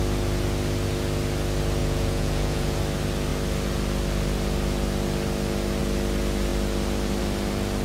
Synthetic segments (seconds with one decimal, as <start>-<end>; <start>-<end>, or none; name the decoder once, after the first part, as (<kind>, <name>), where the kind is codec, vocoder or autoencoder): 1.8-2.8 (vocoder, Vocos)